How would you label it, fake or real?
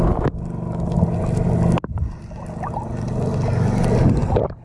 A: real